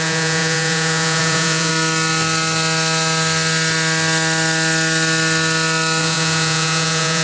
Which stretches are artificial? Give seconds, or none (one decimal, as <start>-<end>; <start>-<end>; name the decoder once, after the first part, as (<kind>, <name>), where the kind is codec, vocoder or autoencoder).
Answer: 0.0-1.7 (vocoder, Vocos); 6.0-7.2